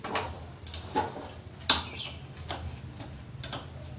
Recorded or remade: recorded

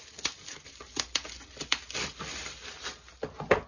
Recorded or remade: recorded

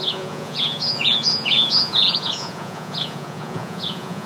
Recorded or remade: remade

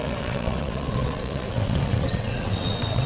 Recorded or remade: remade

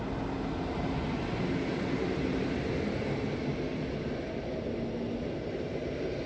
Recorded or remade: recorded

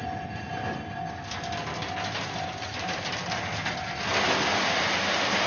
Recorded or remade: recorded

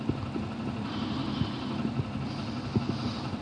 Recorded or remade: recorded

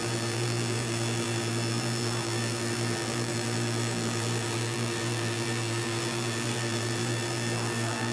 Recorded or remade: remade